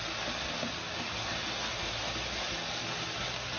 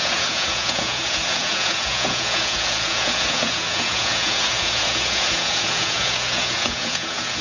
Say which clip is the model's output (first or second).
second